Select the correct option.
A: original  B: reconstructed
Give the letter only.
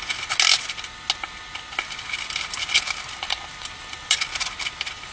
A